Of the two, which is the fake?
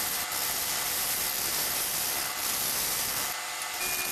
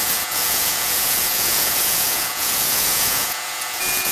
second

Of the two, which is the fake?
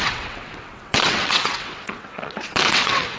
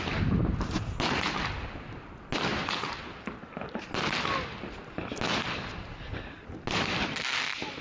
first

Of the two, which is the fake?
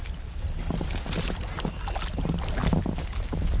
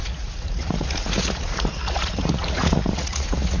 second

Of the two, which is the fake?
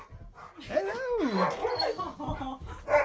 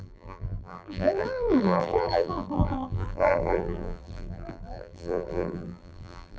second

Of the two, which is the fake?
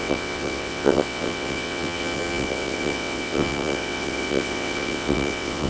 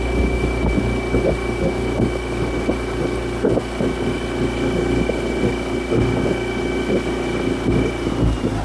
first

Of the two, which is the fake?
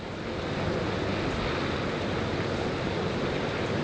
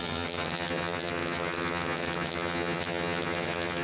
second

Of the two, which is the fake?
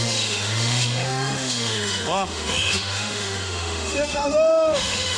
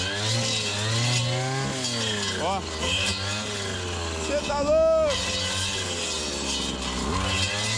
first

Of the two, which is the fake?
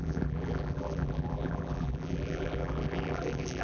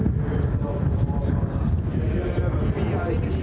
first